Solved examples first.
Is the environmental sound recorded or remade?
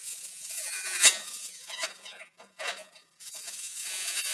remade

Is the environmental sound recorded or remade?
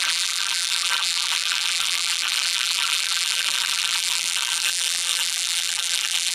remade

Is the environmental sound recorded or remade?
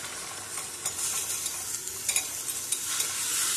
recorded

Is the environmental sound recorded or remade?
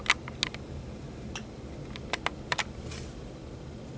recorded